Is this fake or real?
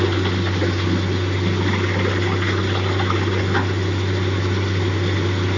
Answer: real